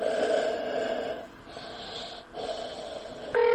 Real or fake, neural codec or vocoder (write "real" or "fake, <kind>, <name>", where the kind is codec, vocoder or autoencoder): real